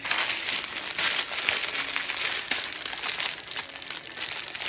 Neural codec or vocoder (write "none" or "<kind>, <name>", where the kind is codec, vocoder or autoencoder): none